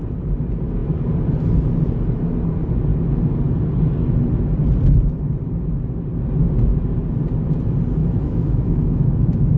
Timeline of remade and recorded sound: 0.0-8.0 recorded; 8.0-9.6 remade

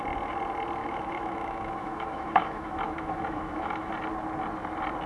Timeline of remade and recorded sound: 0.0-0.8 recorded; 0.8-3.9 remade; 3.9-5.1 recorded

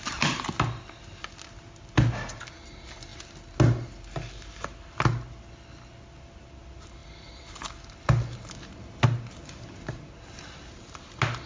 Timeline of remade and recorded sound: 0.0-11.5 recorded

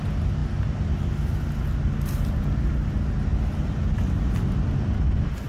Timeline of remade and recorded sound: 0.0-5.5 recorded